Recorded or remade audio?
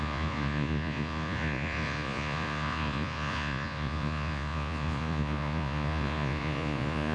remade